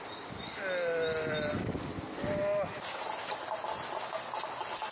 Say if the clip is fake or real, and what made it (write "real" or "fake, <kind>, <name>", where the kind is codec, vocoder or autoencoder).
real